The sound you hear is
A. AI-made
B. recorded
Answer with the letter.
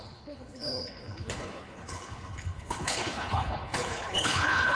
A